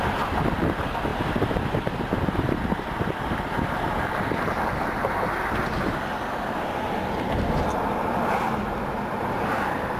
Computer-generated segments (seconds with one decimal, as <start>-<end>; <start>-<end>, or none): 1.1-4.1